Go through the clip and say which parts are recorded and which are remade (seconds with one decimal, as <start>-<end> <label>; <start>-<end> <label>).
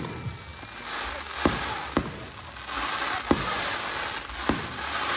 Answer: 0.0-5.2 recorded